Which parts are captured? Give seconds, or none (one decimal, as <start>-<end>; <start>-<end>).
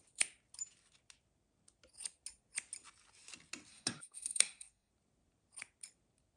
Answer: 0.0-3.7; 4.9-6.4